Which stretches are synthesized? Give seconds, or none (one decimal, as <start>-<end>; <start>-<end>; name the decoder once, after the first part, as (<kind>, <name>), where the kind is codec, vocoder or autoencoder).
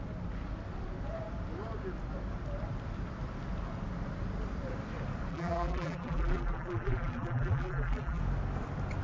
5.3-8.2 (vocoder, BigVGAN v2)